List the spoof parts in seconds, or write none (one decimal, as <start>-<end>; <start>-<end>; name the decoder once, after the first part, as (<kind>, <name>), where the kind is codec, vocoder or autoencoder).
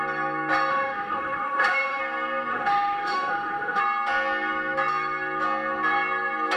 0.7-2.0 (autoencoder, DAC-VAE); 2.5-3.8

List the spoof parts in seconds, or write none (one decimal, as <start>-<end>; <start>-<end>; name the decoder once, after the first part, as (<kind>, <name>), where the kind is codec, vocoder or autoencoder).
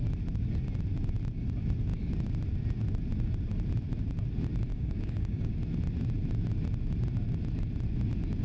4.7-5.5 (codec, DAC)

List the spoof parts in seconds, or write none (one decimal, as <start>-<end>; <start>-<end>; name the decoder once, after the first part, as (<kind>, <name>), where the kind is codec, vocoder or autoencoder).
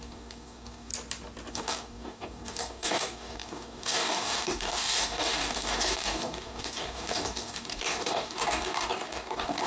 0.0-0.9 (codec, DAC); 1.5-9.7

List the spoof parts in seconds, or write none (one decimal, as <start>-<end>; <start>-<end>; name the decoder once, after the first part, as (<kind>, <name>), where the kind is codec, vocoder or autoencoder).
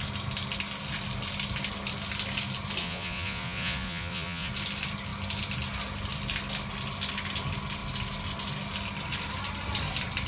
2.8-4.5 (vocoder, Vocos)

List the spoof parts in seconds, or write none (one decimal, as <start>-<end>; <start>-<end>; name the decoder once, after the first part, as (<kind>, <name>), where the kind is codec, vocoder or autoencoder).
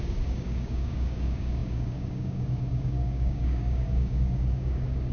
0.0-5.1 (codec, DAC)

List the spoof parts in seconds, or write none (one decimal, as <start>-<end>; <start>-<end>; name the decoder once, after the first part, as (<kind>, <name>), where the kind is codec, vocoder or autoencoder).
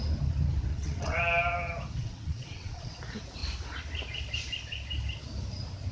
0.7-1.2 (vocoder, WaveNeXt); 2.0-3.0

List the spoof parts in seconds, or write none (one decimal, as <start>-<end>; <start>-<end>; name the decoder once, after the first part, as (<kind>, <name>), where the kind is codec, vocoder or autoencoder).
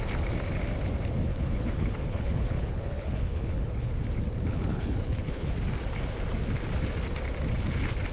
1.3-3.9 (codec, HILCodec); 4.5-5.5